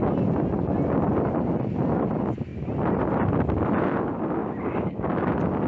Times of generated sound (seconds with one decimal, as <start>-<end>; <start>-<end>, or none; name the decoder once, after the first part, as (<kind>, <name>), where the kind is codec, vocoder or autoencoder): 4.4-5.3 (codec, DAC)